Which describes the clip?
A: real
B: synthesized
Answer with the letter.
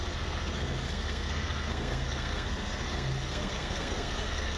B